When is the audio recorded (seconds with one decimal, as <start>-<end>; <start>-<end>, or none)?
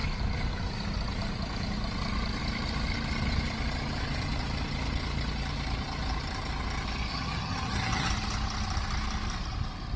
0.0-7.1; 8.1-10.0